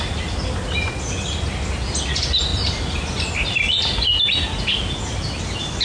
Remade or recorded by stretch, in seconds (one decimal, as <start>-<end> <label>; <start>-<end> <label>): 0.0-5.8 recorded